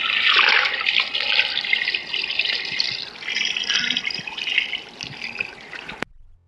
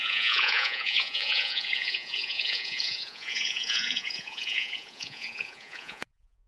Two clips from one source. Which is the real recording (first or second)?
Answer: first